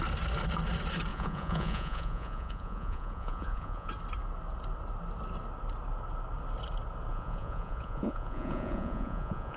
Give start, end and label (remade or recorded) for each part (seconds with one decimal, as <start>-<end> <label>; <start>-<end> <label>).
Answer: 0.0-1.1 recorded; 1.1-3.9 remade; 3.9-7.1 recorded; 7.1-9.6 remade